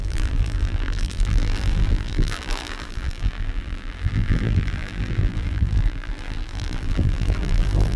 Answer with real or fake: fake